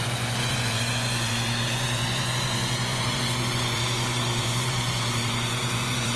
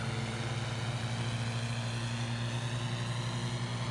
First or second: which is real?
second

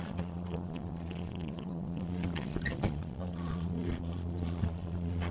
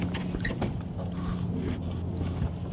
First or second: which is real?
second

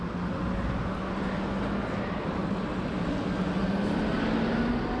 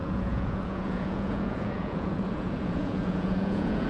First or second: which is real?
first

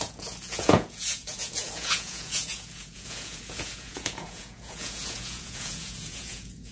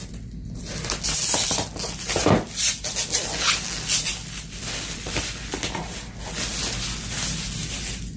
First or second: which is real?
second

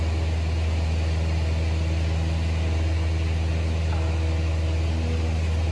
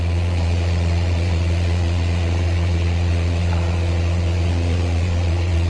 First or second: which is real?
first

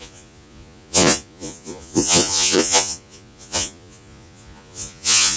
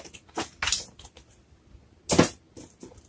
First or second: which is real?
second